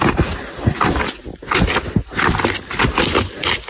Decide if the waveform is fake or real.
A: real